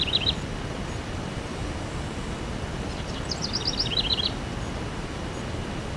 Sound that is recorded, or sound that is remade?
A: recorded